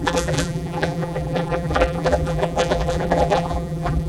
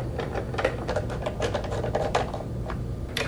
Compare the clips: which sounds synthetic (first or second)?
first